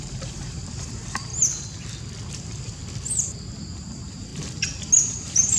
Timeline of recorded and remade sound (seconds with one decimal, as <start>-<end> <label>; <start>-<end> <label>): 0.0-1.3 remade; 1.3-2.3 recorded; 2.3-2.8 remade; 2.8-3.8 recorded; 3.8-4.3 remade; 4.3-5.0 recorded; 5.0-5.6 remade